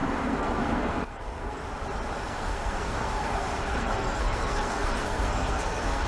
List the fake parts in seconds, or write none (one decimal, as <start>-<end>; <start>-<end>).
0.0-1.6; 2.2-6.1